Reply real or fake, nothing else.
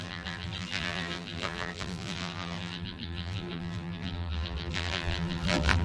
fake